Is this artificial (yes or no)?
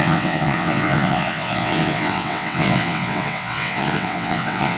yes